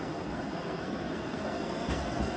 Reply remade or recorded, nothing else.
remade